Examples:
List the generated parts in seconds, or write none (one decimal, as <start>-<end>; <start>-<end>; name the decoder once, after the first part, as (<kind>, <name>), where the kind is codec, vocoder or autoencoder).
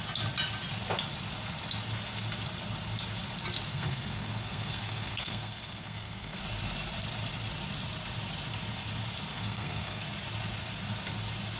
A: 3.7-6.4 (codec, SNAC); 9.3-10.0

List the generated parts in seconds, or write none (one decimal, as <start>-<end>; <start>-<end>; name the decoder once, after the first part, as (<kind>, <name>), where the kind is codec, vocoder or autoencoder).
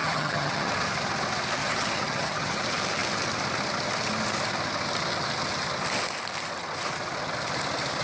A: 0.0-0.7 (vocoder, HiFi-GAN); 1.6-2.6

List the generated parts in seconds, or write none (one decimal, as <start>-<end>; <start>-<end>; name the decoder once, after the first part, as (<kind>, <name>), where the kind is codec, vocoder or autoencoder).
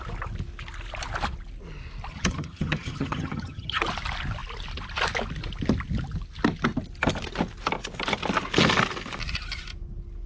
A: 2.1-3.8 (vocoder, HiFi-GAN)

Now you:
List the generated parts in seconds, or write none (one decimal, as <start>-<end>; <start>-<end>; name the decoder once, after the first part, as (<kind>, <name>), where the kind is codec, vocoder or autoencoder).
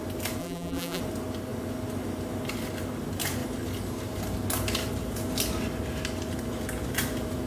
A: 0.4-1.0 (vocoder, BigVGAN v2)